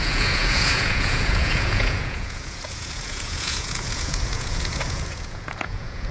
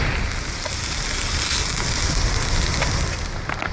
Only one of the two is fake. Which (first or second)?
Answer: first